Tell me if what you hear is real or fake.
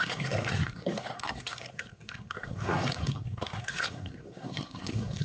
fake